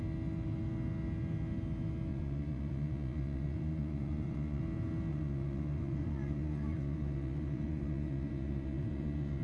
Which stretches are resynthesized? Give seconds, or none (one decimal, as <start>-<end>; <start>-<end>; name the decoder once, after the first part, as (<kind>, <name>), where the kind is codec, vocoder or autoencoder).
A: 2.1-4.6 (vocoder, Vocos); 5.1-9.4